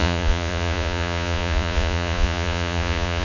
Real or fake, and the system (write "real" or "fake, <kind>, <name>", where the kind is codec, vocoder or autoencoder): fake, vocoder, Vocos